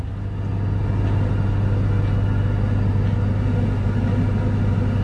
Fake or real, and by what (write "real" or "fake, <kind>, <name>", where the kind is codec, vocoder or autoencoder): real